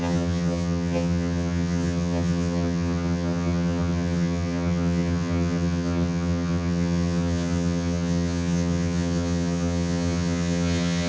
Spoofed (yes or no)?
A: yes